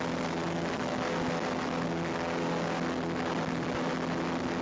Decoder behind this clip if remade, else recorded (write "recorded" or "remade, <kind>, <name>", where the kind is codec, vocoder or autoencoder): recorded